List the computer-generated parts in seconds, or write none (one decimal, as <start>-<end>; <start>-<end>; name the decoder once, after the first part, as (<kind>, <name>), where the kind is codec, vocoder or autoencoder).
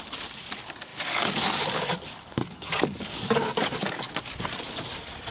0.9-4.1 (codec, DAC)